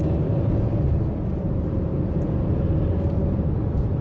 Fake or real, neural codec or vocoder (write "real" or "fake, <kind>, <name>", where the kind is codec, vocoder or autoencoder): real